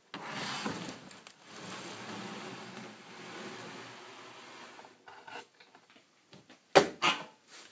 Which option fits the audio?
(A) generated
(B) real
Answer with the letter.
B